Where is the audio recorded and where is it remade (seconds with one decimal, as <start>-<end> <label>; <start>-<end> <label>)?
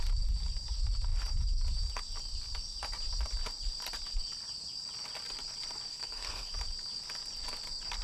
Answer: 0.0-5.9 recorded; 5.9-6.5 remade; 6.5-8.0 recorded